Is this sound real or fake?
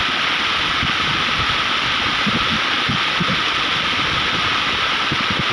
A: real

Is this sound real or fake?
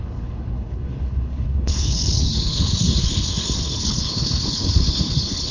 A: fake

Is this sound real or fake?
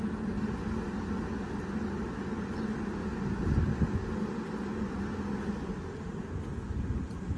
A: real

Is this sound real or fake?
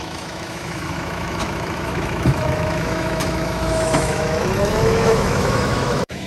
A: fake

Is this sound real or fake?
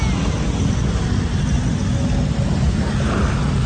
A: real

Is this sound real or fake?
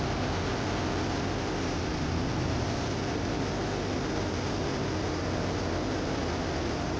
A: real